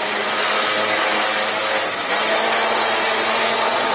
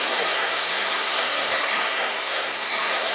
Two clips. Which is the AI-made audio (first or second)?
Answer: second